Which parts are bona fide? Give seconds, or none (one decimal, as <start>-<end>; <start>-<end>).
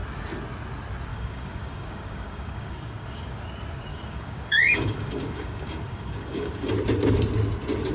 0.0-1.1; 3.4-3.9; 6.7-7.9